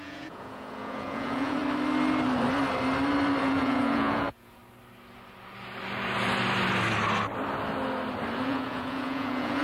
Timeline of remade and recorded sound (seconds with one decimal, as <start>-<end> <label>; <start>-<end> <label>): 0.0-1.6 remade; 1.6-3.4 recorded; 3.4-4.6 remade; 4.6-8.4 recorded; 8.4-9.6 remade